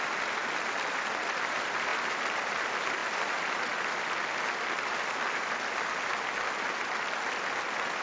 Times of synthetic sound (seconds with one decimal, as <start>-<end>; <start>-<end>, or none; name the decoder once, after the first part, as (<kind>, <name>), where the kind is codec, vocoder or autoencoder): none